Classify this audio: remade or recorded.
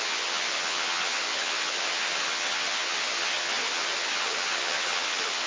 remade